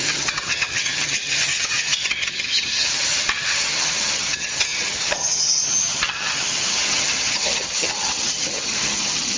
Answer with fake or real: fake